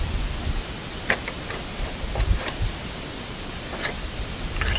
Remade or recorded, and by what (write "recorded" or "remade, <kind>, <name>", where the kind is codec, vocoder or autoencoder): recorded